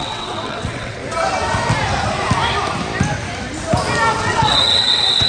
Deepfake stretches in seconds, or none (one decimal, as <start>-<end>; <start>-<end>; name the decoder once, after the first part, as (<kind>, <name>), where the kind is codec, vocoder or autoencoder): 0.0-1.0 (vocoder, WaveNeXt); 4.2-5.3

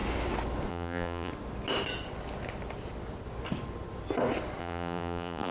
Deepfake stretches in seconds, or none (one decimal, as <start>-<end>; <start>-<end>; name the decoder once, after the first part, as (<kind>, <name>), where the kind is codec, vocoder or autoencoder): 0.7-1.3 (vocoder, BigVGAN v2); 4.6-5.5

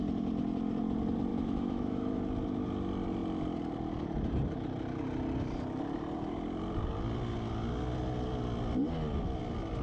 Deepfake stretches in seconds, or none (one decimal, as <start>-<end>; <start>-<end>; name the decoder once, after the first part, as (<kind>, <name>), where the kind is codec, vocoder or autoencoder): 1.3-2.2 (autoencoder, DAC-VAE)

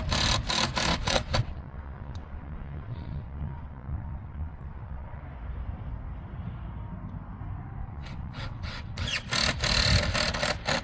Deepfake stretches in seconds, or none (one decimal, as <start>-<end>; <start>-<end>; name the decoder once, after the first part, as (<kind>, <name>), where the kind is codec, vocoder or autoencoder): 0.9-5.2 (vocoder, WaveNeXt); 7.8-9.2

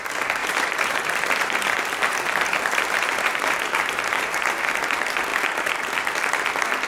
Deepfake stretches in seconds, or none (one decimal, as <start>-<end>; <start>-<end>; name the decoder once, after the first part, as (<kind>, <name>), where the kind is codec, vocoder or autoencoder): 0.4-4.5 (vocoder, BigVGAN v2)